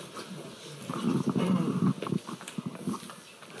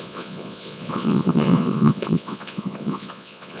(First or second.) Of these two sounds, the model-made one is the second